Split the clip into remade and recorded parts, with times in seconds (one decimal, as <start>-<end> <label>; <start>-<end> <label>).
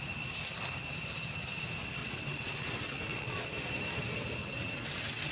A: 0.0-2.0 recorded; 2.0-3.4 remade; 3.4-4.4 recorded; 4.4-5.3 remade